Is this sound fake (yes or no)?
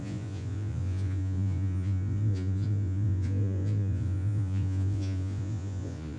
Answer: yes